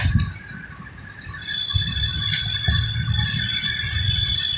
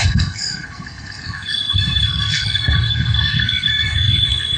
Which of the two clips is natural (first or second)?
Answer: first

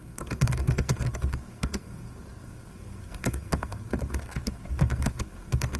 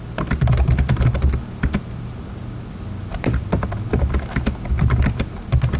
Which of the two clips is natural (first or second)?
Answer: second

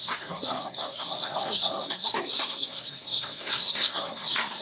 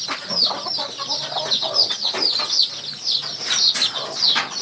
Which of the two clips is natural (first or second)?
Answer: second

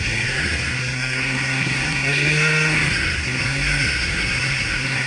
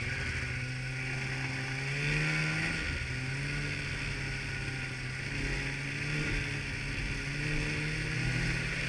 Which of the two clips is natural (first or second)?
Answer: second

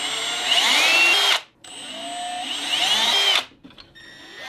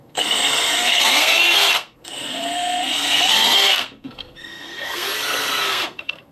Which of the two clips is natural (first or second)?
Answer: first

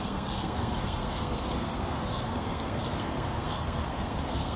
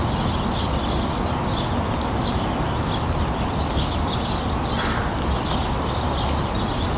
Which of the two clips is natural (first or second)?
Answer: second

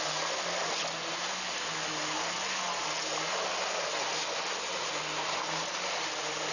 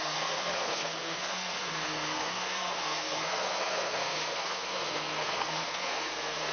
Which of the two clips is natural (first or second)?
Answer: first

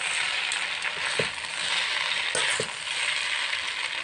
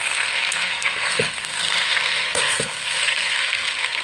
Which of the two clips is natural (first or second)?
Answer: first